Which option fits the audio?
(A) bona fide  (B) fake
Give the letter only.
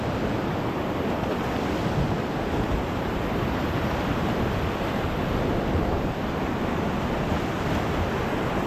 A